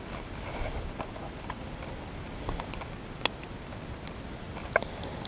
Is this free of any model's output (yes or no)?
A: yes